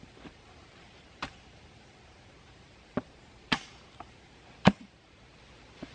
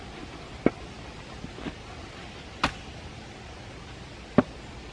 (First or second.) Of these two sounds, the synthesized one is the first